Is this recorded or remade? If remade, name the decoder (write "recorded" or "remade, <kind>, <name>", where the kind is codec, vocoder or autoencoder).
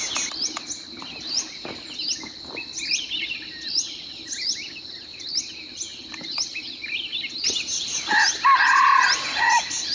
recorded